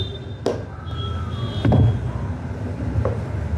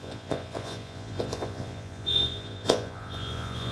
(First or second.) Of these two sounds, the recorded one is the first